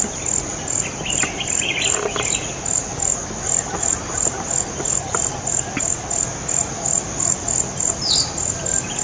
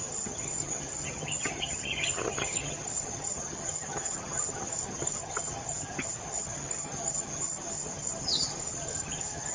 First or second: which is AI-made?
second